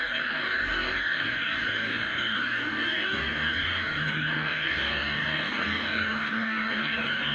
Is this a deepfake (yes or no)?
yes